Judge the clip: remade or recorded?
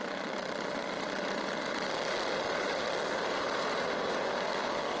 recorded